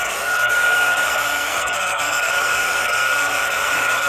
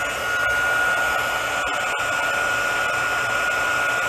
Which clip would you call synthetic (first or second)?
first